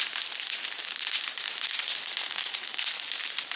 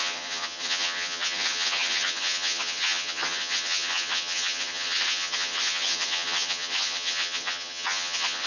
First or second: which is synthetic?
second